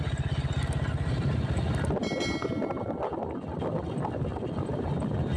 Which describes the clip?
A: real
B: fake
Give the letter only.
A